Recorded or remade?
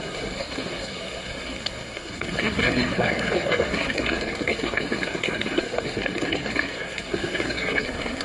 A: remade